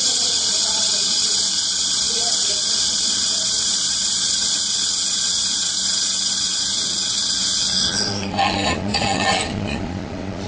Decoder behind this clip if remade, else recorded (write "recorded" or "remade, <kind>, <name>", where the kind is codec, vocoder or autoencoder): remade, vocoder, Vocos